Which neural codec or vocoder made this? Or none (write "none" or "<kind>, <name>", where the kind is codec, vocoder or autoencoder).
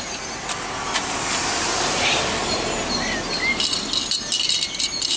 none